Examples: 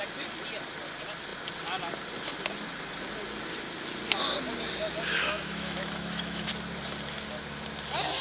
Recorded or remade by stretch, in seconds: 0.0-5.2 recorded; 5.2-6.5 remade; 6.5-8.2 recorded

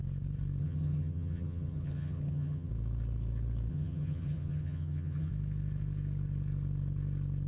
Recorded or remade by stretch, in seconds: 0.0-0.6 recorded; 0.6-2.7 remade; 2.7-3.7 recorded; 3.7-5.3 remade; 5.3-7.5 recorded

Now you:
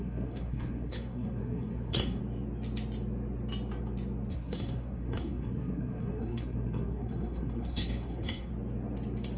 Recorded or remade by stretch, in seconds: 0.0-2.2 remade; 2.2-4.3 recorded; 4.3-8.5 remade; 8.5-9.4 recorded